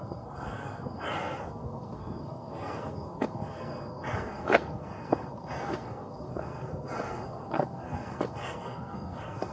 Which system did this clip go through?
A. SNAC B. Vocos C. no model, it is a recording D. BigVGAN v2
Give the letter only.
A